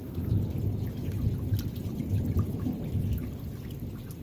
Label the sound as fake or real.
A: real